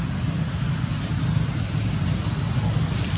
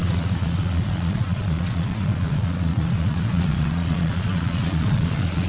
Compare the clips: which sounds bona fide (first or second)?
first